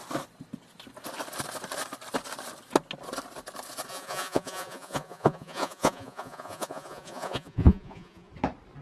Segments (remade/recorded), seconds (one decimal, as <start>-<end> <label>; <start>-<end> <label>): 0.0-3.9 recorded; 3.9-8.3 remade; 8.3-8.8 recorded